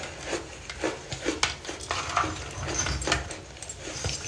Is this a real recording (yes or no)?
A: yes